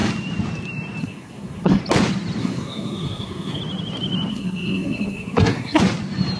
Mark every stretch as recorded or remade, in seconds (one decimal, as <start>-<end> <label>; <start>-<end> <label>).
0.0-1.0 recorded; 1.0-1.8 remade; 1.8-2.4 recorded; 2.4-3.6 remade; 3.6-4.3 recorded; 4.3-5.8 remade; 5.8-6.4 recorded